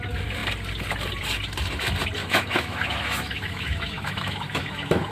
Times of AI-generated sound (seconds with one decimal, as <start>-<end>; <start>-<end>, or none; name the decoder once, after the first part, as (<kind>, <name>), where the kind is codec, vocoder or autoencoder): 2.2-5.1 (autoencoder, DAC-VAE)